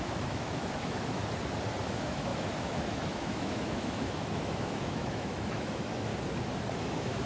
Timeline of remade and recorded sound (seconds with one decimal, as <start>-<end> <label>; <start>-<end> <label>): 0.0-1.2 remade; 1.2-1.8 recorded; 1.8-6.1 remade; 6.1-6.7 recorded; 6.7-7.3 remade